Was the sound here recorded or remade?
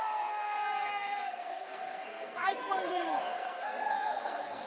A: remade